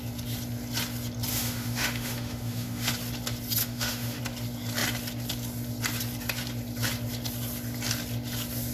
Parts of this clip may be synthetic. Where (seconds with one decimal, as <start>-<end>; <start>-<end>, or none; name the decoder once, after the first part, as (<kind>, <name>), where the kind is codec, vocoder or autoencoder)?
1.3-2.9 (autoencoder, DAC-VAE); 3.6-4.2